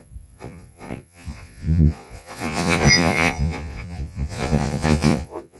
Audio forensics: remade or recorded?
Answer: remade